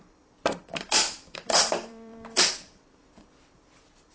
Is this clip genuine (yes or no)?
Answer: no